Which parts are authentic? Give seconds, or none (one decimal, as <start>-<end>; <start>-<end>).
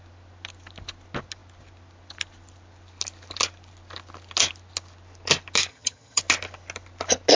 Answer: 0.0-5.7; 6.2-7.3